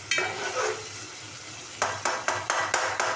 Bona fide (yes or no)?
yes